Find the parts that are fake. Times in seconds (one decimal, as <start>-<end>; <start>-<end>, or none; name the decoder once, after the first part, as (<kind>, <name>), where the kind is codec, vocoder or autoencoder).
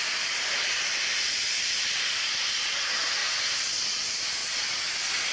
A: 0.0-3.2 (vocoder, BigVGAN v2); 3.7-4.4